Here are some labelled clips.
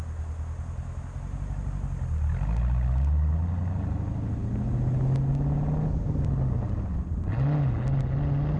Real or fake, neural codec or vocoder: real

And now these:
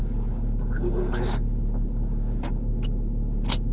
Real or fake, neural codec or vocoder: real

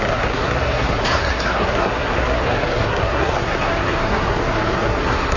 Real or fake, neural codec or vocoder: fake, codec, SNAC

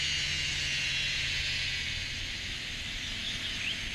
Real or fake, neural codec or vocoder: real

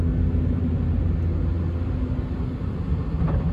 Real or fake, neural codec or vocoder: real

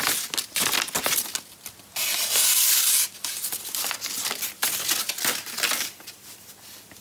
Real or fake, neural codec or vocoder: real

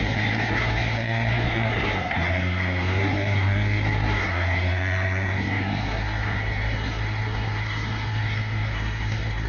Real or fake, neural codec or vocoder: fake, codec, SNAC